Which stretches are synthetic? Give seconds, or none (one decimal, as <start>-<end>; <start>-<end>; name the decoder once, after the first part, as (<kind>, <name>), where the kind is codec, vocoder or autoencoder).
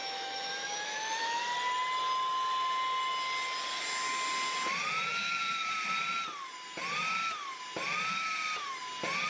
0.0-1.4 (autoencoder, DAC-VAE); 5.1-5.7